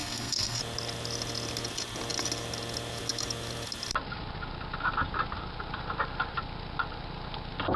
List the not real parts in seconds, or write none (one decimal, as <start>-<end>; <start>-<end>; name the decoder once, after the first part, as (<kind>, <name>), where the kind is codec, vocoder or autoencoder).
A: 0.0-0.6 (codec, SNAC)